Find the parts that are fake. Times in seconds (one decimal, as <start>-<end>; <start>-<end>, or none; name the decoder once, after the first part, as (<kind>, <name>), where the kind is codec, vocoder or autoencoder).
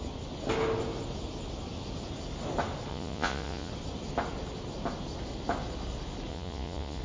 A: 2.9-3.7 (vocoder, Vocos); 6.3-7.0